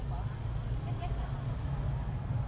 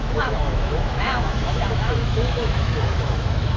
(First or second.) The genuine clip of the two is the first